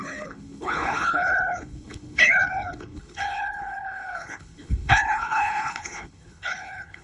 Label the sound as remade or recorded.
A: remade